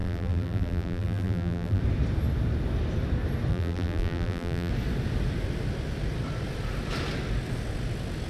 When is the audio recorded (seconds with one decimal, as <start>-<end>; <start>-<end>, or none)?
1.8-3.5; 4.7-8.3